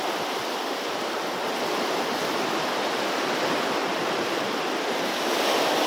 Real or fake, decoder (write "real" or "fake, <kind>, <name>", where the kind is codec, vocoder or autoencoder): real